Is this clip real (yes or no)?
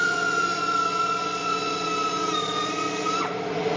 no